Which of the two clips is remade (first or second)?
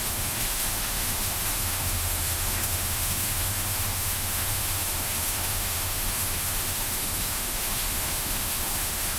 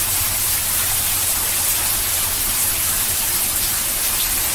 first